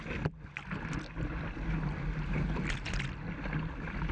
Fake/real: real